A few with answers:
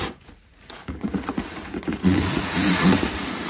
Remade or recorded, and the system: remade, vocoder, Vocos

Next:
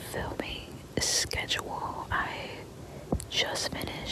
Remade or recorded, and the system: remade, vocoder, BigVGAN v2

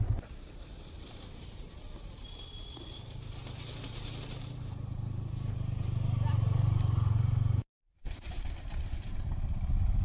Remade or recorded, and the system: remade, vocoder, BigVGAN v2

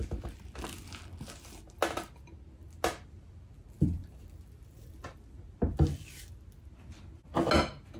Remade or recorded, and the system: recorded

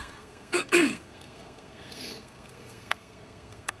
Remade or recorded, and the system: remade, codec, SNAC